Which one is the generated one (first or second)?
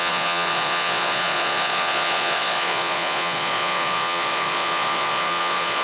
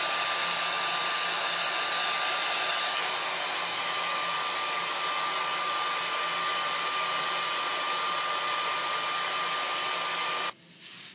first